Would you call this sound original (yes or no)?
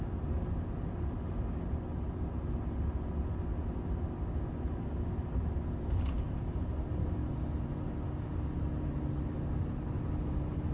yes